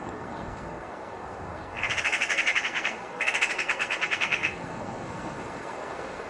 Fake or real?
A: fake